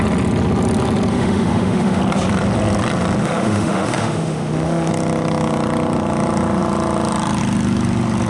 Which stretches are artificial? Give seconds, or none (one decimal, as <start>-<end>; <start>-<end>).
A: 1.1-2.0; 3.2-4.9